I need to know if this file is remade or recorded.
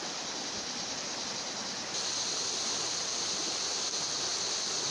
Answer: recorded